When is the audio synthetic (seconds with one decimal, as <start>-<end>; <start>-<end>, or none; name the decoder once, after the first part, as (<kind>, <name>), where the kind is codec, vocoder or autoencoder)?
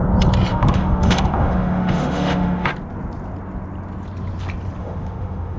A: 0.5-2.7 (autoencoder, DAC-VAE); 4.8-5.6